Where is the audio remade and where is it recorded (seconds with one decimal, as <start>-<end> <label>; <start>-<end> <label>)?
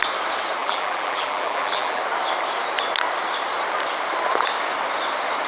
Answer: 0.0-0.6 recorded; 0.6-2.0 remade; 2.0-5.5 recorded